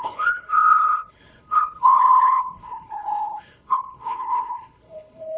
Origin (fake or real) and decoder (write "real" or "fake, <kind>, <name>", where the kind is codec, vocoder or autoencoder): fake, codec, HILCodec